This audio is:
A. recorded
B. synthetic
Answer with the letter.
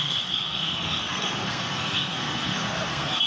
B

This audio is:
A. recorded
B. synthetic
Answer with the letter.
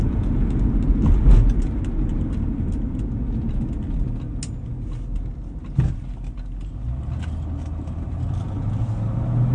A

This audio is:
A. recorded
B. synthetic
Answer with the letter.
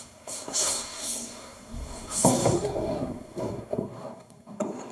B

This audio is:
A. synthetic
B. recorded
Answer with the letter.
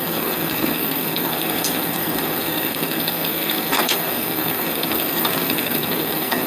A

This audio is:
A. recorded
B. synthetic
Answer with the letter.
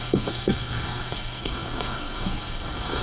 B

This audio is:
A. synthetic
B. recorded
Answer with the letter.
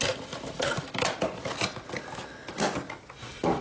B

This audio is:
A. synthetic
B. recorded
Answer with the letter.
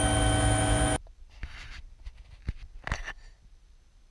B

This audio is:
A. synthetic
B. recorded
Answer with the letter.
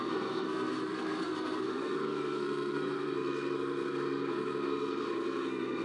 A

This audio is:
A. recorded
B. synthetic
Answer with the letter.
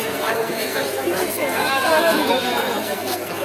B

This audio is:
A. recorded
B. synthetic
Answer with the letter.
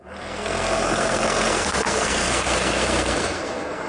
B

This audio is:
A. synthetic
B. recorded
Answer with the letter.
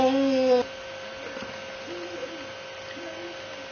B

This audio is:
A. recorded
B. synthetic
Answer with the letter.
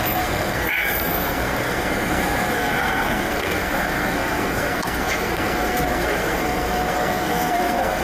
B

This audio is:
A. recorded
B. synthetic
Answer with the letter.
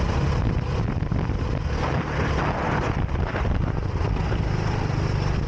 A